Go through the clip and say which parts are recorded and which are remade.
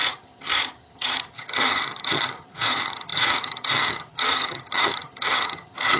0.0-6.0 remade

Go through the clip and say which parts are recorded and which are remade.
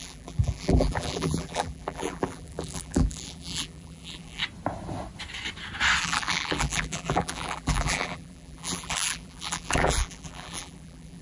0.0-4.4 remade; 4.4-6.0 recorded; 6.0-11.2 remade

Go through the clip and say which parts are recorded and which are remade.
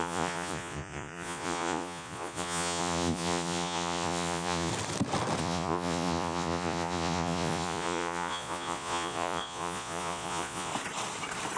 0.0-4.7 remade; 4.7-5.4 recorded; 5.4-10.7 remade; 10.7-11.6 recorded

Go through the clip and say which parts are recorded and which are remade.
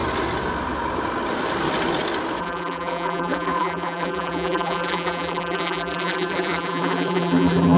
0.0-2.4 recorded; 2.4-7.8 remade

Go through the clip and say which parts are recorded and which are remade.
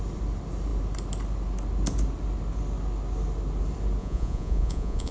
0.0-4.0 recorded; 4.0-5.1 remade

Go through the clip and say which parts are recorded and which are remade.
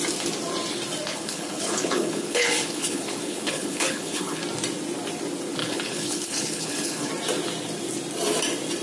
0.0-1.1 recorded; 1.1-4.4 remade; 4.4-5.6 recorded; 5.6-7.1 remade; 7.1-8.8 recorded